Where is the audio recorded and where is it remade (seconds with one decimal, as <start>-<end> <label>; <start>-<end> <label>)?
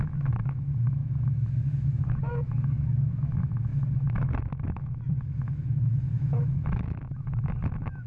0.0-8.1 remade